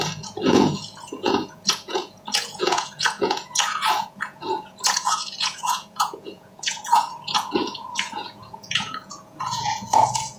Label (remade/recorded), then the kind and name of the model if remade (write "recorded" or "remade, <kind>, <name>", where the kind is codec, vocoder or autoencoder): remade, vocoder, Vocos